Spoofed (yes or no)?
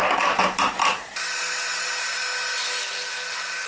no